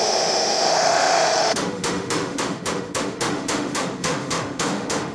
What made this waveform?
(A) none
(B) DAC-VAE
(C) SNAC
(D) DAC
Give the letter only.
B